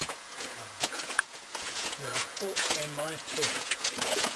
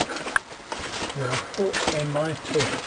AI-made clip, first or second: first